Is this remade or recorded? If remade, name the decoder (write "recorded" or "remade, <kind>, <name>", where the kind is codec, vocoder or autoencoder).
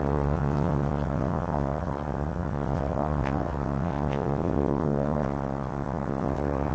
remade, vocoder, WaveNeXt